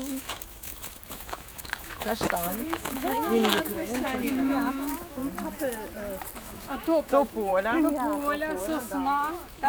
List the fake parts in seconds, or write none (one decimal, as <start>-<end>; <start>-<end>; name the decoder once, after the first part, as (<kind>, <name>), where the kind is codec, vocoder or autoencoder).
0.0-5.2 (autoencoder, DAC-VAE); 6.4-7.5; 8.6-9.7